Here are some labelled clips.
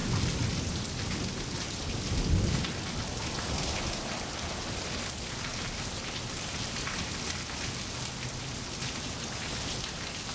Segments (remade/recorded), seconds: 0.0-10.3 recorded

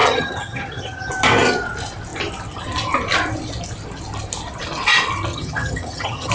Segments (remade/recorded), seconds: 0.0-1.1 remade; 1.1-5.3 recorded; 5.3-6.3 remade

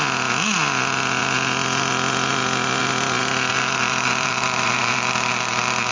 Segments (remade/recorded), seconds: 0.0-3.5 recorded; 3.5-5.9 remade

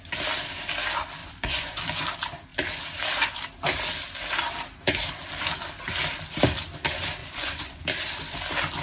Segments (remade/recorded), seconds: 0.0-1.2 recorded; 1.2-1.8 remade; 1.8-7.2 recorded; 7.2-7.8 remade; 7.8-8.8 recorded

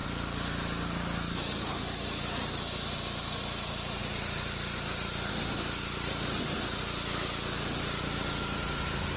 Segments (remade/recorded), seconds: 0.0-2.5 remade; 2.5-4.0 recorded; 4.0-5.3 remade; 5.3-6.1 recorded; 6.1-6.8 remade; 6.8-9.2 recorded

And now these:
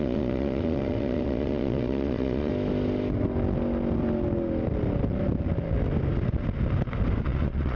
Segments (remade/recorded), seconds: 0.0-2.5 remade; 2.5-7.2 recorded; 7.2-7.8 remade

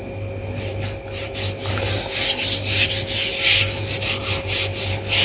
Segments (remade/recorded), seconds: 0.0-5.2 recorded